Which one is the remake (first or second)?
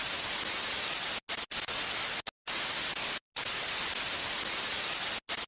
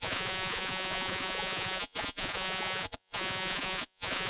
second